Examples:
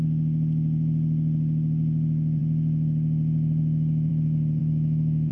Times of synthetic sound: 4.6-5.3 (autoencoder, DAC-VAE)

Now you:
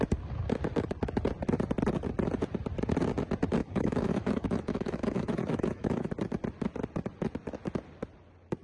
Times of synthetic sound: 3.6-6.1 (autoencoder, DAC-VAE)